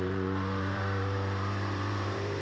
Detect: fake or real fake